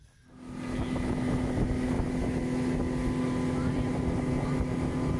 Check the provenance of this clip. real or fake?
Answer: real